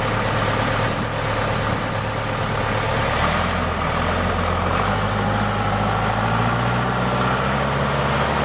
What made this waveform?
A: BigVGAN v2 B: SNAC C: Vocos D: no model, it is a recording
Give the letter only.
D